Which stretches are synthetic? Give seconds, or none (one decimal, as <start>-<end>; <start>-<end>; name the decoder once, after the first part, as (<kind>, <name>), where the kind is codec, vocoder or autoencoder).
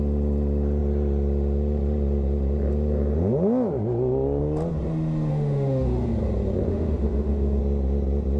5.3-6.1 (autoencoder, DAC-VAE); 6.7-7.6